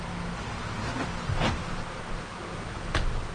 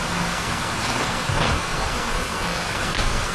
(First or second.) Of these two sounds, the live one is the first